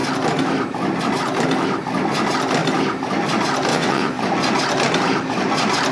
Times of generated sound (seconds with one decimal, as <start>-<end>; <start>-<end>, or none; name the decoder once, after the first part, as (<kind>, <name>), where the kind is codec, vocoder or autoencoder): 3.7-4.2 (vocoder, WaveNeXt)